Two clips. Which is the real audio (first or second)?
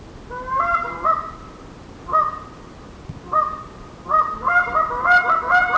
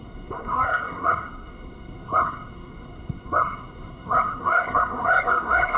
first